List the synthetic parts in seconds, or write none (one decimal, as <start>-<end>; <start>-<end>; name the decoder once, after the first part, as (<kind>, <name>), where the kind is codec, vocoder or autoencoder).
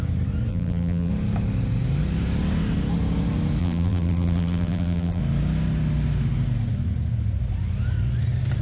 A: 0.5-1.1 (vocoder, BigVGAN v2); 3.6-5.2